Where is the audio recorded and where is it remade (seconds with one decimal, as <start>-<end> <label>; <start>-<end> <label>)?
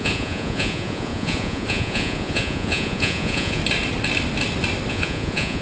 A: 0.0-3.6 remade; 3.6-4.9 recorded; 4.9-5.6 remade